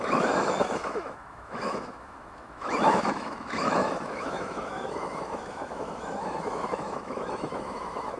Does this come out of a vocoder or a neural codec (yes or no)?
yes